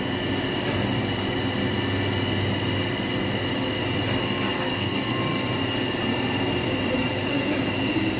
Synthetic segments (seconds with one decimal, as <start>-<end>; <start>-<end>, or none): 4.5-5.2